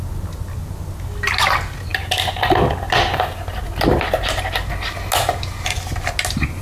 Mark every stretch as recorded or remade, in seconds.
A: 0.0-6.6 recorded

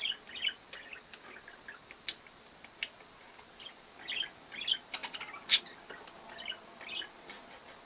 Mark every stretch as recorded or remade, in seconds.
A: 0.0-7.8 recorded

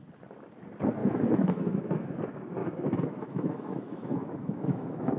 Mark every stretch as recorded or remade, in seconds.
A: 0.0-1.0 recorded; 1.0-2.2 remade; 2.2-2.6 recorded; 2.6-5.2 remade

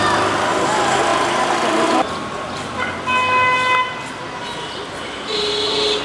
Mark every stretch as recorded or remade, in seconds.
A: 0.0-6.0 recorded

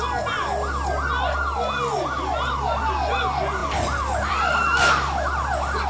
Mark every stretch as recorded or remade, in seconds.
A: 0.0-5.9 recorded

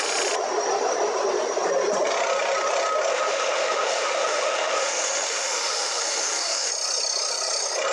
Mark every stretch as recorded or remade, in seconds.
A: 0.0-3.1 recorded; 3.1-6.7 remade; 6.7-7.9 recorded